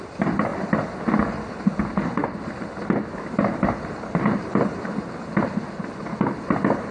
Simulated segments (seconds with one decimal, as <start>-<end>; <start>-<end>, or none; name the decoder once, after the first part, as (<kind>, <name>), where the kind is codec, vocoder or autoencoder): none